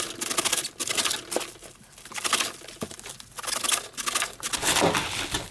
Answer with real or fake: real